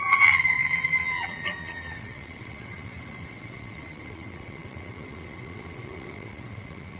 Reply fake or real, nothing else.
fake